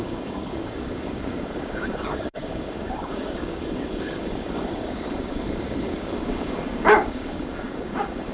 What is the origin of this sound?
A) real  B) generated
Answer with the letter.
B